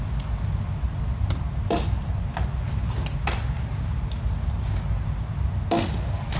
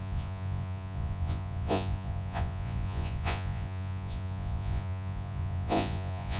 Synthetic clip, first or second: second